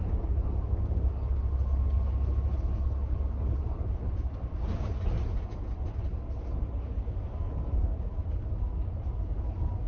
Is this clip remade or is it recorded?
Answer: recorded